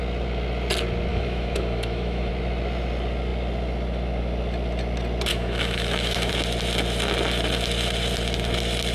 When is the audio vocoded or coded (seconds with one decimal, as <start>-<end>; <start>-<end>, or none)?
1.1-2.3; 5.3-6.3